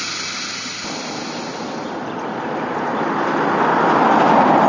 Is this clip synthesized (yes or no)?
no